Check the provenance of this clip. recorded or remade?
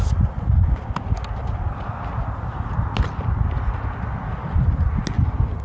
recorded